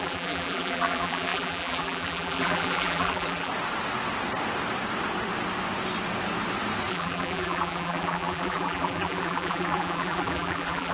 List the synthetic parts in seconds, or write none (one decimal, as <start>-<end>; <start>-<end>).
0.0-3.5; 6.9-10.9